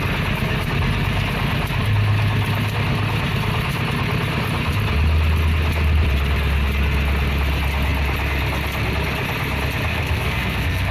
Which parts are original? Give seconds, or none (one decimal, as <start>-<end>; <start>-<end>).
0.0-9.9